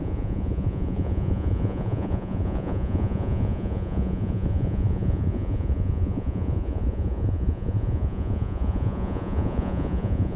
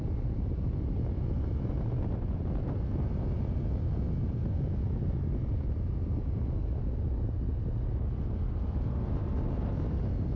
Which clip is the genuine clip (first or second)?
second